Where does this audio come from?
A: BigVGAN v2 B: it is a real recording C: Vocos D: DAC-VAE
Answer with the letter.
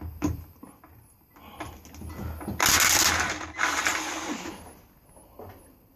B